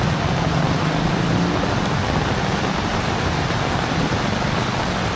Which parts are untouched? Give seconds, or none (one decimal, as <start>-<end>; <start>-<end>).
0.0-2.9; 3.5-5.2